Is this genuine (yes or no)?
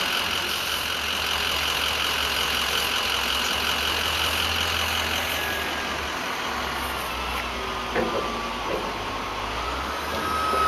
yes